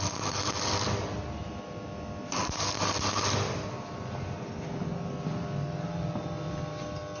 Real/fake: real